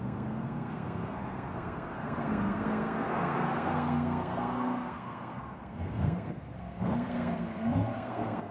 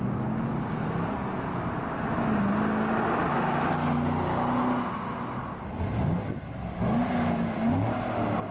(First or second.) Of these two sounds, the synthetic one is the first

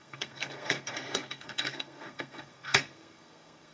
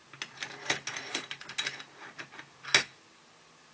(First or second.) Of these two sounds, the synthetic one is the first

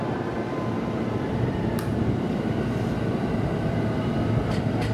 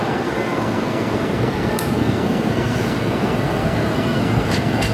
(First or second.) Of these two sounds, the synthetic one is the second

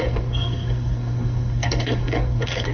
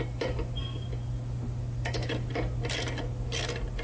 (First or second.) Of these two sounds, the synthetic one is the first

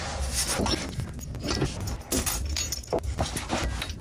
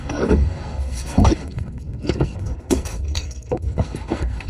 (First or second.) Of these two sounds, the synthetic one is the second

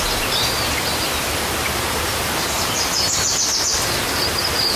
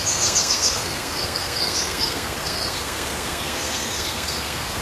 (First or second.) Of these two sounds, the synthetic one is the second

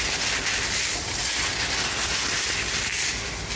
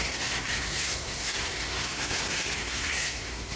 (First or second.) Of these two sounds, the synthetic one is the second